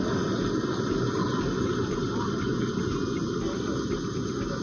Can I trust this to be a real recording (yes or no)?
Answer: yes